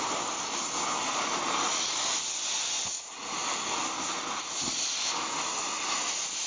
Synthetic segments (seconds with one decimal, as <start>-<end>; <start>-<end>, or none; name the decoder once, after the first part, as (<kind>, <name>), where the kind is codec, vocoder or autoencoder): none